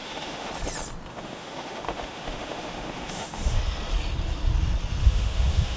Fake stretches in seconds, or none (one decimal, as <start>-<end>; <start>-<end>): 0.0-0.5; 1.1-3.6; 5.0-5.8